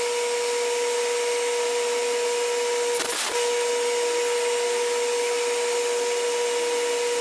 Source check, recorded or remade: recorded